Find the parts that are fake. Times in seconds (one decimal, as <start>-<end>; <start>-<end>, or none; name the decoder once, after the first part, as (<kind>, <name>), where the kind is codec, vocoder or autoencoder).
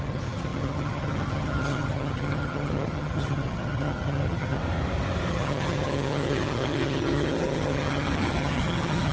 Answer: 0.0-4.6 (vocoder, HiFi-GAN); 5.3-9.1